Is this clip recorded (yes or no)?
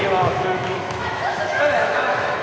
no